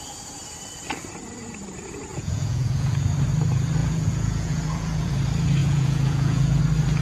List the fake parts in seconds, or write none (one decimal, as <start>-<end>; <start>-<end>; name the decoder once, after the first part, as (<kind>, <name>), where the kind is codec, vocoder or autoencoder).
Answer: 2.1-3.1 (vocoder, Vocos); 3.8-5.1; 5.6-6.6